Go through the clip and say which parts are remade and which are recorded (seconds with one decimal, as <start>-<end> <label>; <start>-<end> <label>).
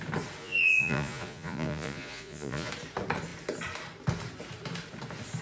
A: 0.0-0.4 recorded; 0.4-2.7 remade; 2.7-5.4 recorded